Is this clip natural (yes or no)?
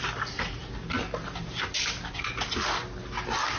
yes